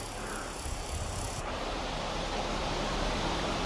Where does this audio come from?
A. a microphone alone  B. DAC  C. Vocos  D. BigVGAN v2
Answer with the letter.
D